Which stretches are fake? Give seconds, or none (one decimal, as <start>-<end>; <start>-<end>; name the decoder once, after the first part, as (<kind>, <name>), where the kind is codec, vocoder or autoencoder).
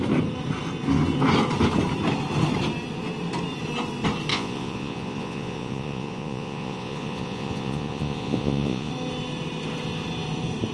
4.3-8.9 (vocoder, Vocos)